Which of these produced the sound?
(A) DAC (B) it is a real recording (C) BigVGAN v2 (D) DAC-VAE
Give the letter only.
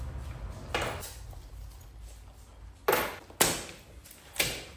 B